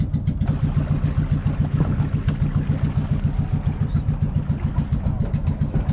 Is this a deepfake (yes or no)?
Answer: no